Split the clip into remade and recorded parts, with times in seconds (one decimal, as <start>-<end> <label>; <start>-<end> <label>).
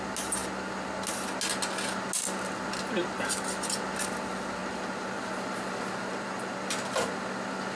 0.0-7.7 recorded